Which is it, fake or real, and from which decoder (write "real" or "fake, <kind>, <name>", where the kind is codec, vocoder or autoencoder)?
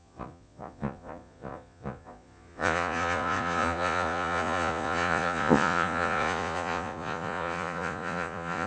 fake, vocoder, Vocos